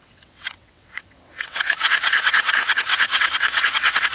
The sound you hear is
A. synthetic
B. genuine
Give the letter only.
A